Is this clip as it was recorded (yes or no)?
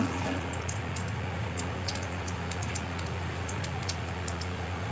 no